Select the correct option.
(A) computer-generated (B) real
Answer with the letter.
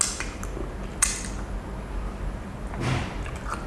B